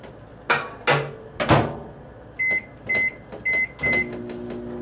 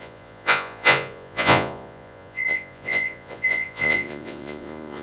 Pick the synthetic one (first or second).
second